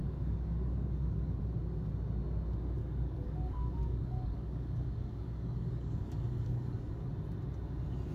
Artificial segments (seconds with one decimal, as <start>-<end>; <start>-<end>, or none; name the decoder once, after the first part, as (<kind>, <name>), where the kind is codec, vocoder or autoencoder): 0.0-1.4 (codec, DAC); 2.8-7.1